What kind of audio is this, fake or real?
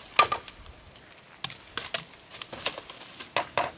real